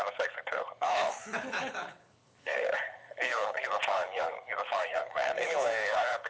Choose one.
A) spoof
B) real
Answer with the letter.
A